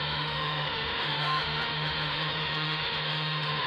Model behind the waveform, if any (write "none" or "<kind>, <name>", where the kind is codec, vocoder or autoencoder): autoencoder, DAC-VAE